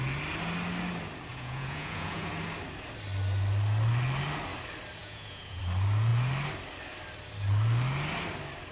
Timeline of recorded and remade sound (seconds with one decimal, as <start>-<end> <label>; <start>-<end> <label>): 0.0-1.3 recorded; 1.3-2.3 remade; 2.3-5.0 recorded; 5.0-5.6 remade; 5.6-8.7 recorded